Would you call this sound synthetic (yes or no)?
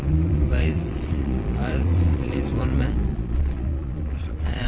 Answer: yes